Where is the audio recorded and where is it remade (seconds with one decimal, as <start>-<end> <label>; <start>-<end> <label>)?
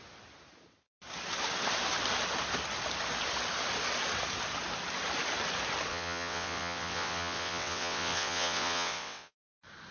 0.0-5.9 recorded; 5.9-9.4 remade; 9.4-9.9 recorded